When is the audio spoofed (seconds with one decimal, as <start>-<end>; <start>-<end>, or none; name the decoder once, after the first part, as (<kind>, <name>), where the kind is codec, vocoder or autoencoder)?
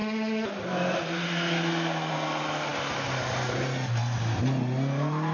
none